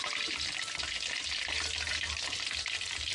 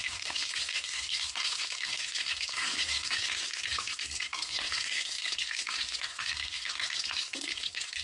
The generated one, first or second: second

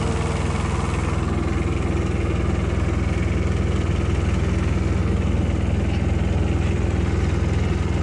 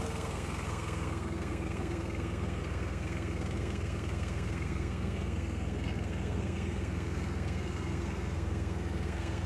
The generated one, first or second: second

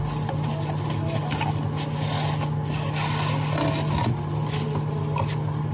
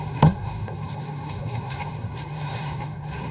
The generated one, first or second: second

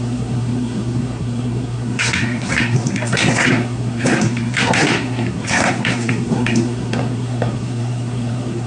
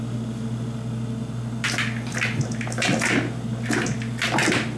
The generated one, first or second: first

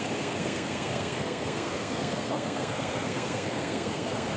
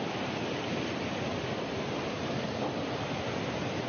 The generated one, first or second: first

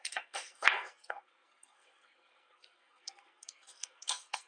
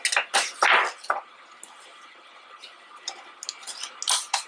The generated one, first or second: first